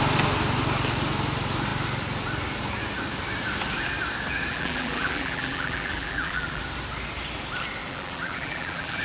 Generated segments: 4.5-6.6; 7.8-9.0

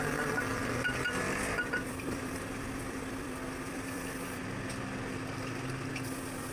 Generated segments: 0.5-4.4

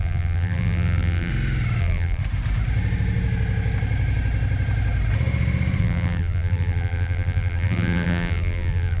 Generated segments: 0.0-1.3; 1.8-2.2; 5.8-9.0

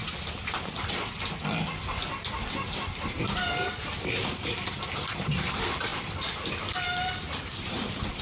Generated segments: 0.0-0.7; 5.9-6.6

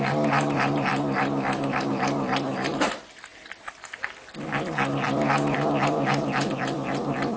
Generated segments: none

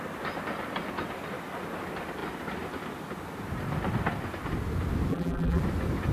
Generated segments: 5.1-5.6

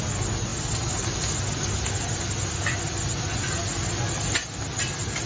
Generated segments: none

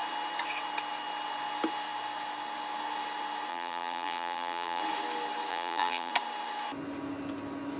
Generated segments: 3.5-4.8; 5.5-6.1